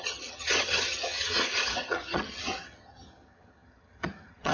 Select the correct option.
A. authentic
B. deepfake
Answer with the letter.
B